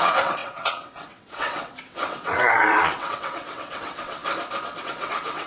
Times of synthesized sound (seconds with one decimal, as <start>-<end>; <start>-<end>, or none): 0.0-4.2; 4.8-5.5